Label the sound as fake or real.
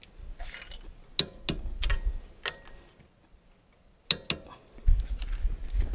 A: real